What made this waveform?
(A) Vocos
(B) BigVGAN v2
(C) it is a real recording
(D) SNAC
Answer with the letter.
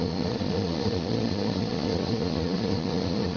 A